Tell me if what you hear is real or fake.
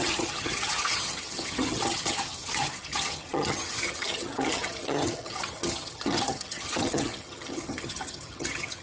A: fake